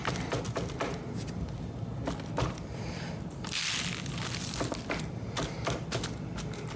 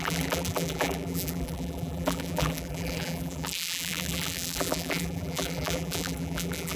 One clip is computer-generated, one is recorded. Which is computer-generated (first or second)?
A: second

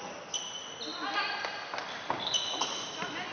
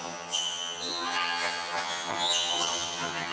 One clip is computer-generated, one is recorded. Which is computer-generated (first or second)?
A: second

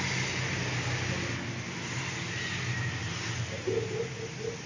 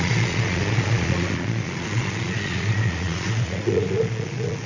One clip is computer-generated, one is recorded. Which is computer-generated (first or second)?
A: second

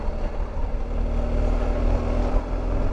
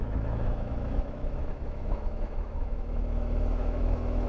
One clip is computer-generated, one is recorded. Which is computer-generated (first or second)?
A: second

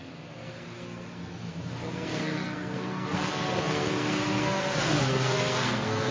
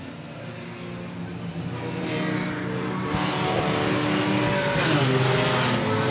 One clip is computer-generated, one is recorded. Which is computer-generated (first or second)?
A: first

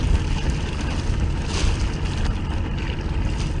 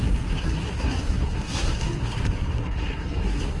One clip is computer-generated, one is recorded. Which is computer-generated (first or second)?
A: second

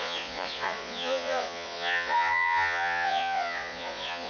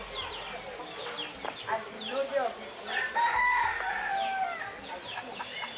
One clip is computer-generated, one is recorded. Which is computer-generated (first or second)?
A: first